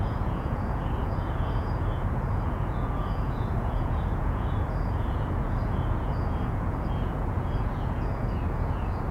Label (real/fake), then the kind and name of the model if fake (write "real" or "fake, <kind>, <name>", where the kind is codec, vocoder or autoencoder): fake, vocoder, Vocos